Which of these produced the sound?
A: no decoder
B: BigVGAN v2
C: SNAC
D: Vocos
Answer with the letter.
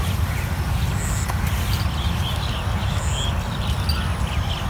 A